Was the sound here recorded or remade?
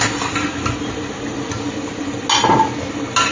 recorded